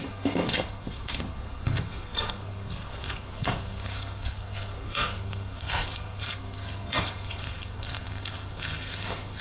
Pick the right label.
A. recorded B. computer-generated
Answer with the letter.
B